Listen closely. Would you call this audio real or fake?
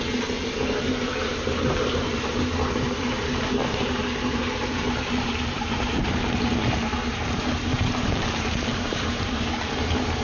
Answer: fake